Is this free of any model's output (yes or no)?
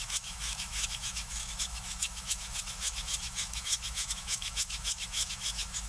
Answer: no